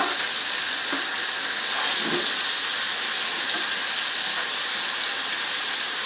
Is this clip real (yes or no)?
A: yes